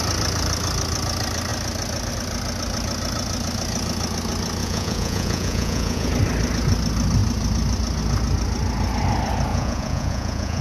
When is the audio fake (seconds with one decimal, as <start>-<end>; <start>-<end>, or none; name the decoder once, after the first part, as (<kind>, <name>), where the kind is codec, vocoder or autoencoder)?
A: 4.6-6.1 (vocoder, Vocos); 9.5-10.6